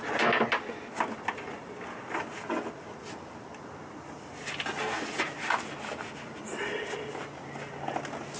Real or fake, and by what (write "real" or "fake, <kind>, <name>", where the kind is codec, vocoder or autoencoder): real